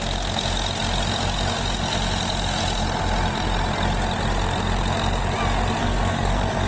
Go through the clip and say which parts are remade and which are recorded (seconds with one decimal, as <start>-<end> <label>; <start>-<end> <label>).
0.0-5.8 recorded; 5.8-6.7 remade